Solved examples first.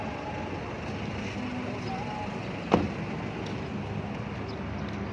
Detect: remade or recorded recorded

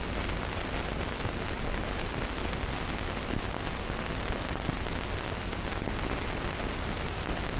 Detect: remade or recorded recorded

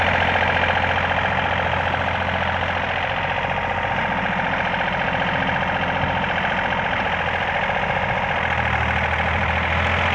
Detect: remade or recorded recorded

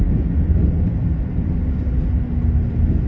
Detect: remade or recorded recorded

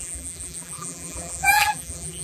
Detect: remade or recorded remade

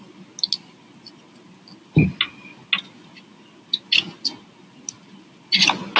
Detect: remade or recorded recorded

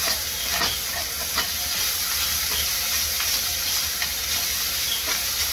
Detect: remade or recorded recorded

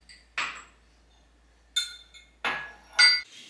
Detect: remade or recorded recorded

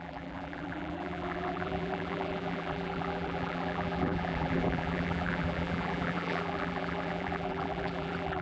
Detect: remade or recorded remade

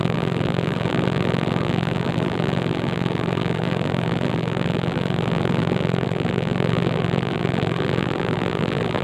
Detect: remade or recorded remade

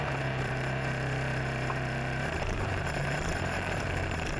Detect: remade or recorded remade